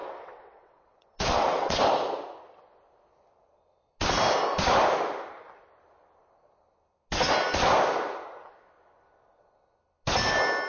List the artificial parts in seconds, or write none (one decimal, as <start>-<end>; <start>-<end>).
0.0-1.8